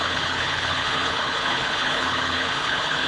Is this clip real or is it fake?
fake